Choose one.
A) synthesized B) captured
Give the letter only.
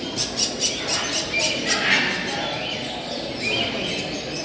B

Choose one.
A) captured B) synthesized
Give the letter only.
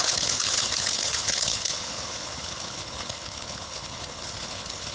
B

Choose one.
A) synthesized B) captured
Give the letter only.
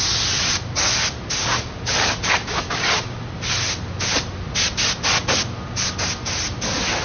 B